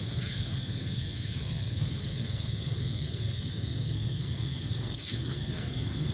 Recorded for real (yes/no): no